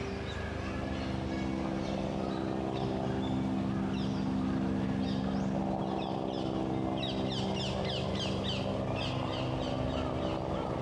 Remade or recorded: recorded